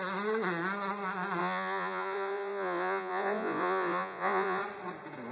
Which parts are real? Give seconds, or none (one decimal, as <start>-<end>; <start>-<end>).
0.0-1.4; 4.6-5.3